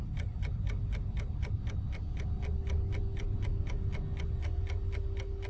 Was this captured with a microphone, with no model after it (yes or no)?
yes